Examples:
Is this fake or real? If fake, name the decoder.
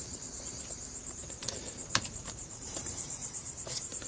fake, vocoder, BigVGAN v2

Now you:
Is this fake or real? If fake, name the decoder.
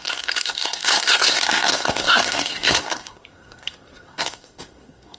fake, codec, SNAC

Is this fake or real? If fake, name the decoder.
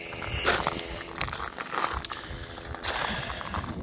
real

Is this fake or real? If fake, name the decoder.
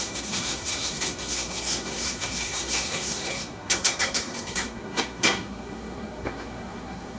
fake, codec, SNAC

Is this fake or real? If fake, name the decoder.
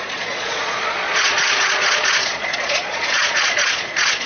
fake, vocoder, Vocos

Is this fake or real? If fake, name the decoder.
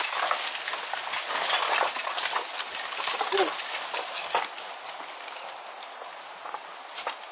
real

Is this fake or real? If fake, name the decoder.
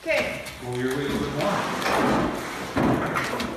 real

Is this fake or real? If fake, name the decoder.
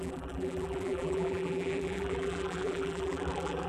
fake, vocoder, BigVGAN v2